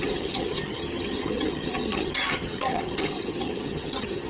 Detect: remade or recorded remade